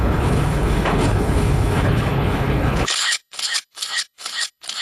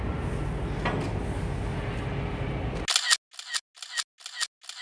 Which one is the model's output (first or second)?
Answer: first